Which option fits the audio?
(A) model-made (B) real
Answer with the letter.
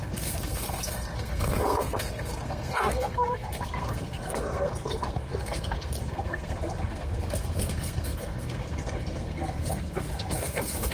A